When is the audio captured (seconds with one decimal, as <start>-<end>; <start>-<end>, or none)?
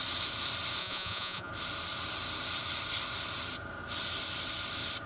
0.0-0.8; 1.5-5.1